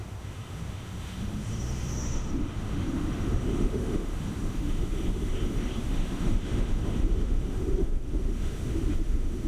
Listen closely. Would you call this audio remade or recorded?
remade